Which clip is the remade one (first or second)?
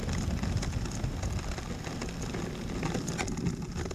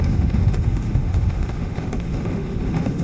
second